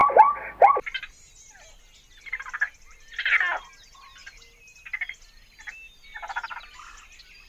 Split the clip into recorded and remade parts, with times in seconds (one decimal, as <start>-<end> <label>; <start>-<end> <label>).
0.0-1.1 remade; 1.1-7.5 recorded